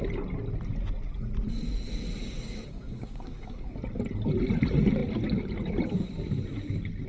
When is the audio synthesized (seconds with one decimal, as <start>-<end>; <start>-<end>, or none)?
2.2-3.8